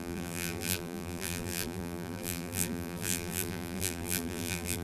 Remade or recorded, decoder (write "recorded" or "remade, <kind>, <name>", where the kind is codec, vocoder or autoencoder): remade, vocoder, BigVGAN v2